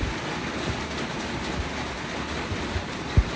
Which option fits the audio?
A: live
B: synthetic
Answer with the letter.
A